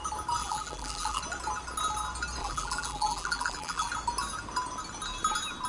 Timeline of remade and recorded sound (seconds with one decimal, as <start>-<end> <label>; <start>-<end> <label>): 0.0-0.4 recorded; 0.4-1.2 remade; 1.2-2.4 recorded; 2.4-3.9 remade; 3.9-5.7 recorded